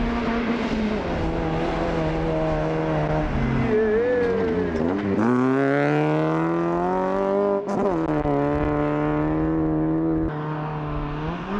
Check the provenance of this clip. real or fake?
real